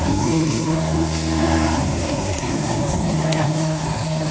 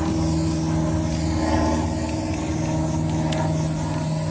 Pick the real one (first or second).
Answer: second